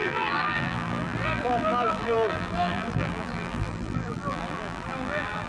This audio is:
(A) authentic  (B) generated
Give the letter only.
B